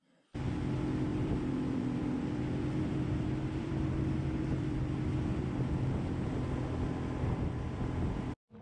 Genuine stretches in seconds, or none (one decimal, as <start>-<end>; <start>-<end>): 0.0-1.1; 6.1-8.6